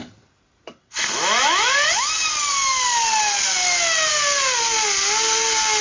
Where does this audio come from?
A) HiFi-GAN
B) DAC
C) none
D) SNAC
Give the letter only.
C